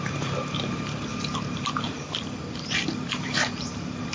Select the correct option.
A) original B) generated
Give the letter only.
B